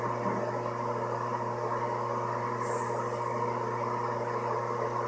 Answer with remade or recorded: recorded